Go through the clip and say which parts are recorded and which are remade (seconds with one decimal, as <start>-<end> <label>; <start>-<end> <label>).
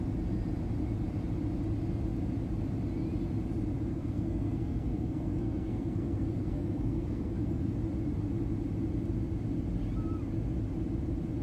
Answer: 0.0-3.9 recorded; 3.9-7.7 remade; 7.7-11.4 recorded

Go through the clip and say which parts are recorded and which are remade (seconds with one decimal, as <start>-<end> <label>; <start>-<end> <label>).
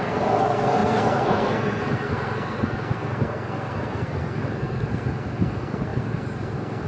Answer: 0.0-6.9 remade